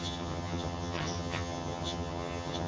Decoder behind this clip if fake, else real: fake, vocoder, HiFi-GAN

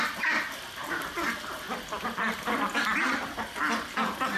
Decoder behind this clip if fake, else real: real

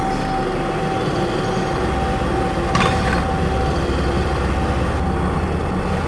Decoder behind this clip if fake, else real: real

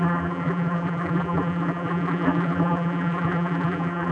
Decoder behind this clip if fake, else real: fake, vocoder, BigVGAN v2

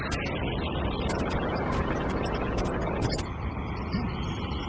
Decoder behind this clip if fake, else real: real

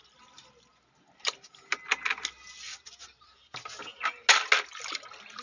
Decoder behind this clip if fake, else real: real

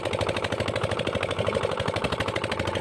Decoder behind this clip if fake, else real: real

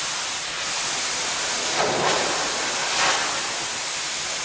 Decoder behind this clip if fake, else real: real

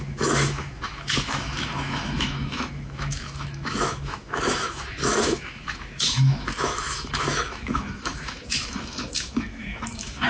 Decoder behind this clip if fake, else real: fake, autoencoder, DAC-VAE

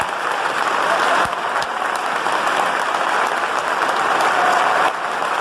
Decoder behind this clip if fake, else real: real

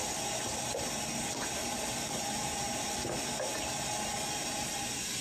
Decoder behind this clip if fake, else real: real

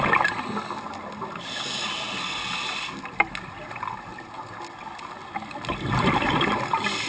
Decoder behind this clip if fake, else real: real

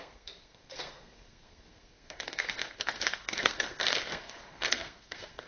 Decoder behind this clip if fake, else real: fake, codec, SNAC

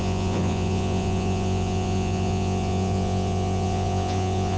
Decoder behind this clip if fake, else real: fake, vocoder, Vocos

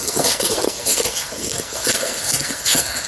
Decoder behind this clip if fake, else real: fake, codec, SNAC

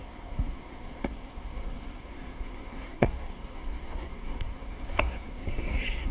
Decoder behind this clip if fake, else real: fake, codec, SNAC